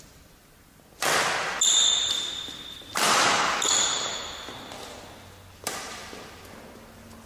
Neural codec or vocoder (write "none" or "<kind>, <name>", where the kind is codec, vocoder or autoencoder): none